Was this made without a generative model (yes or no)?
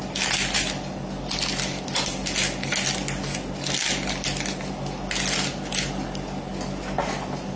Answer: yes